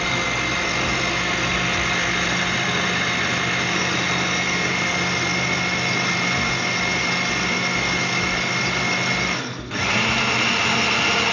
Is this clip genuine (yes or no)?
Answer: yes